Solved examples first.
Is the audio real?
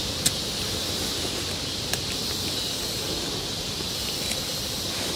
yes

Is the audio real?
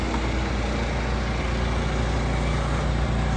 yes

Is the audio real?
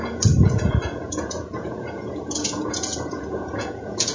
no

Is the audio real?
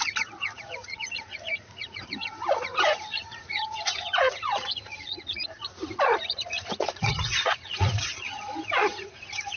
no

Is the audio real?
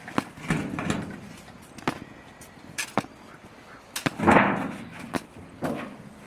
yes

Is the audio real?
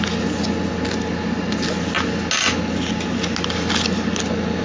yes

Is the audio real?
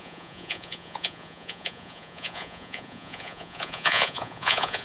no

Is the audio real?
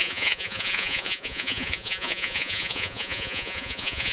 no